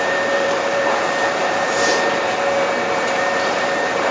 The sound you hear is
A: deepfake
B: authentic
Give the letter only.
A